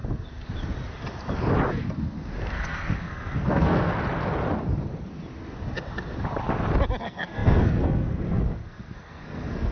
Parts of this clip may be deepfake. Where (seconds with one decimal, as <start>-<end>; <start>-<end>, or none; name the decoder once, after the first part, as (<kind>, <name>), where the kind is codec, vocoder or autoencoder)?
2.5-3.9 (codec, SNAC); 7.0-9.7